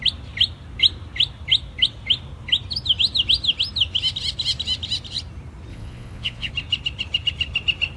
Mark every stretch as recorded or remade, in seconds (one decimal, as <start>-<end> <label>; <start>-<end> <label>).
0.0-5.7 recorded; 5.7-6.5 remade; 6.5-8.0 recorded